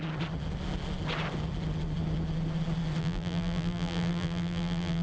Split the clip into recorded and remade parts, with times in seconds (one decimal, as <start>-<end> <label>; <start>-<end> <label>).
0.0-3.0 recorded; 3.0-5.0 remade